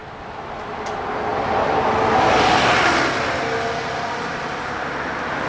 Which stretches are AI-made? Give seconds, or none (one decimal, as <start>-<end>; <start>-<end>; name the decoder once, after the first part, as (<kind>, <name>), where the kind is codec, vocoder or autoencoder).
none